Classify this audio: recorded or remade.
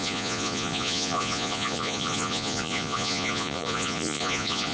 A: remade